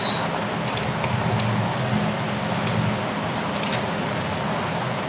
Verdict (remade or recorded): recorded